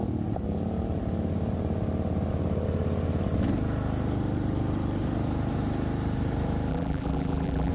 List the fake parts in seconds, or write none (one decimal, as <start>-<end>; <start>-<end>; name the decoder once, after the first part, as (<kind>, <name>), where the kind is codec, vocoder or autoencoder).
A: 6.7-7.7 (vocoder, BigVGAN v2)